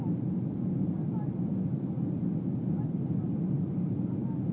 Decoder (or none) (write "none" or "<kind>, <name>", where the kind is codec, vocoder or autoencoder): none